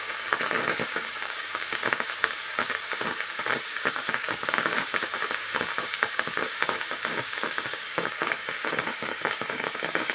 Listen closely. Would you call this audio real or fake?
fake